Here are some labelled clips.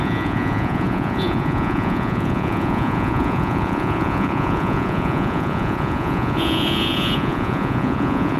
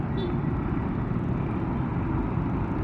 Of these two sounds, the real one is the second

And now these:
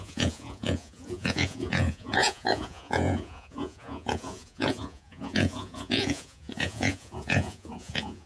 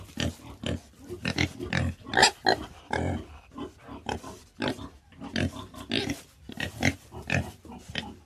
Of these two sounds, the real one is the second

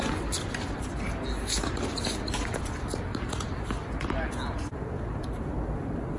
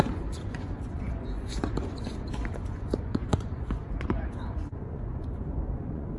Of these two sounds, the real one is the first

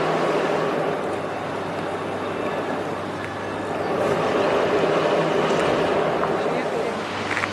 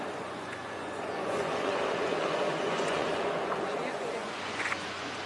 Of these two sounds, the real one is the first